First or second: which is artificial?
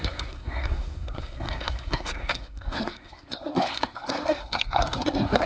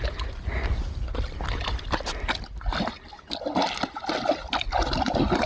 first